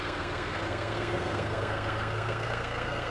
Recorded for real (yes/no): no